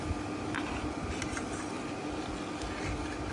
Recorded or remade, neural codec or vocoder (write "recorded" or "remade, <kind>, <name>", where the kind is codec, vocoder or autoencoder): recorded